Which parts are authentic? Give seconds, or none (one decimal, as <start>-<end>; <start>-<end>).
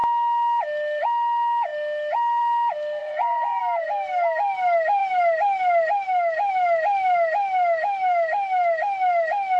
0.0-3.0; 3.6-9.6